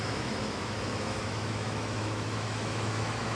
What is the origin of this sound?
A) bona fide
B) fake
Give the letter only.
B